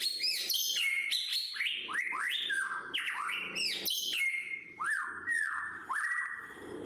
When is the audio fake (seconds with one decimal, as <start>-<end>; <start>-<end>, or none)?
0.0-1.3; 4.3-5.8